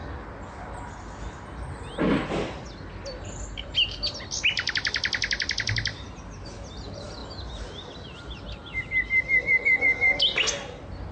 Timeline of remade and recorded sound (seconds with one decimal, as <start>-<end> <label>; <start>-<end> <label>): 0.0-11.1 recorded